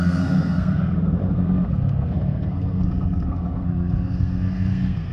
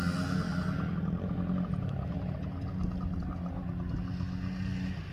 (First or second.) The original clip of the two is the second